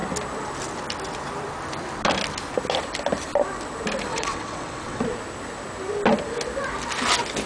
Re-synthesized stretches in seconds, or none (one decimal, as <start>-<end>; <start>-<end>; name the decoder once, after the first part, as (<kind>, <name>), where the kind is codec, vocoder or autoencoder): 4.1-5.0 (vocoder, WaveNeXt)

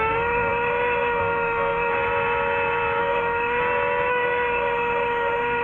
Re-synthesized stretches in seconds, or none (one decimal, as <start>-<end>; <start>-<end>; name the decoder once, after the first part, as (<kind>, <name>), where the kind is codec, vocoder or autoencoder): 0.0-1.9 (autoencoder, DAC-VAE); 3.0-3.6; 4.1-5.6

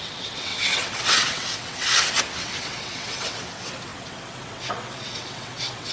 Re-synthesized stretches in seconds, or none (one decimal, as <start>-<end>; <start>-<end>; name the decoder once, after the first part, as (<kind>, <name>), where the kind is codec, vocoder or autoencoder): 0.0-5.9 (vocoder, WaveNeXt)